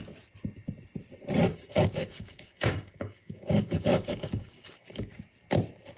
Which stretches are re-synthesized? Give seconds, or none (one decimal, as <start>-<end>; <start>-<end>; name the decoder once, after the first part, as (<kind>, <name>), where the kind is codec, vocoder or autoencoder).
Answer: 1.5-5.1 (codec, DAC)